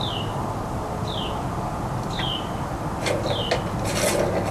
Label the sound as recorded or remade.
recorded